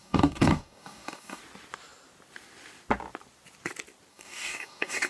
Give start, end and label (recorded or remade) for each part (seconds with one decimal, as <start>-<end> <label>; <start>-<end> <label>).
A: 0.0-1.4 remade; 1.4-4.1 recorded; 4.1-5.1 remade